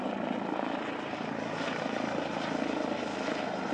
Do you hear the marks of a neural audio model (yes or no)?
no